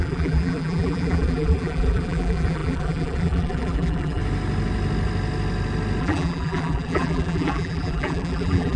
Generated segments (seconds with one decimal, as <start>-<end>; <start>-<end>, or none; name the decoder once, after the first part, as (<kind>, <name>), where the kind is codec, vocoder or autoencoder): 0.0-4.2 (vocoder, BigVGAN v2); 6.0-8.8